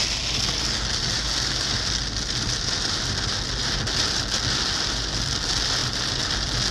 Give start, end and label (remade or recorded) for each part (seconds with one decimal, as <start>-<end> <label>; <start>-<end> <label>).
0.0-6.7 recorded